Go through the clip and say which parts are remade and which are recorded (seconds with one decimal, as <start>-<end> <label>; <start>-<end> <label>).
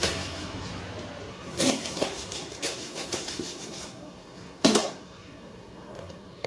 0.0-0.7 remade; 0.7-1.3 recorded; 1.3-6.5 remade